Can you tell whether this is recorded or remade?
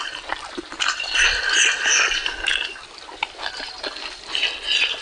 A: recorded